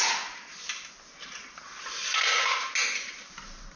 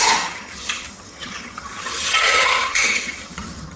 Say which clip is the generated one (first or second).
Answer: second